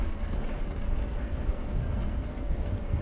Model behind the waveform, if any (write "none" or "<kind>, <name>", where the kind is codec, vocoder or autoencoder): codec, SNAC